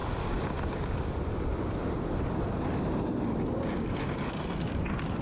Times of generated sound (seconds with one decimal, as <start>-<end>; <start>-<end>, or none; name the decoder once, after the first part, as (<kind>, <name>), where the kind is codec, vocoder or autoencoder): none